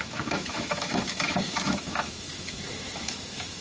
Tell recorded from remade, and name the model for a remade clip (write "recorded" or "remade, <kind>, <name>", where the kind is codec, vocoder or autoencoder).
remade, autoencoder, DAC-VAE